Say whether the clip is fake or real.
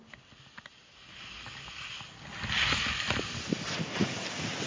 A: real